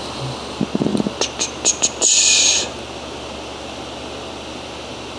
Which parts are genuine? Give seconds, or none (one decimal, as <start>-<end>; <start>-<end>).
0.0-5.2